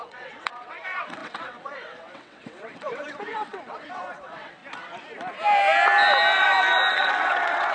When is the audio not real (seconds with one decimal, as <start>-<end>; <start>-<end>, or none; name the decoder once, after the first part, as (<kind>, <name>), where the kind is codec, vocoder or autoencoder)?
0.0-4.6 (vocoder, WaveNeXt); 6.9-7.7